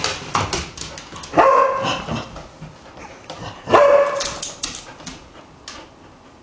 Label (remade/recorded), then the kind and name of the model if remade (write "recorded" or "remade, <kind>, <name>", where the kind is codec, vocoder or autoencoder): recorded